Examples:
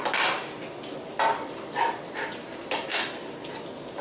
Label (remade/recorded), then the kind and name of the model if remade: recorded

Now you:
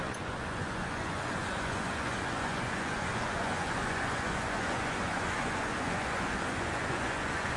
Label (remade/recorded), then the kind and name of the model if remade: remade, vocoder, Vocos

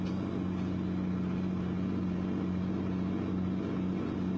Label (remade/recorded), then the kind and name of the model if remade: recorded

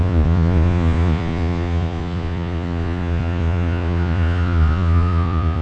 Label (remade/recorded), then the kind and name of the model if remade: remade, vocoder, Vocos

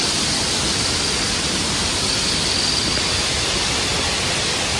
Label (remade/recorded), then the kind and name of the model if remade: recorded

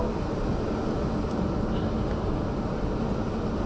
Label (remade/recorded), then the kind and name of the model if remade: recorded